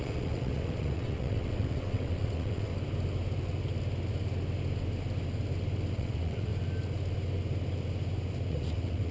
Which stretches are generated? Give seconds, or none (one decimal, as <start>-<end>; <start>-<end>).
0.0-2.7; 5.9-6.5; 8.5-9.1

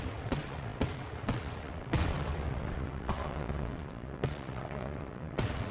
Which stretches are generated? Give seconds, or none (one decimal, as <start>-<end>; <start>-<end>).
0.0-5.7